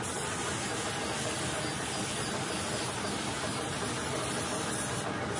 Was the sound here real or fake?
real